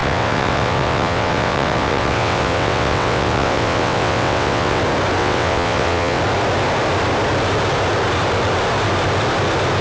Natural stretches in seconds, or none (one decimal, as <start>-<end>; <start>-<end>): 4.8-5.2; 6.2-9.8